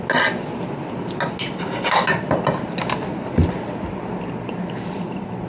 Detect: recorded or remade recorded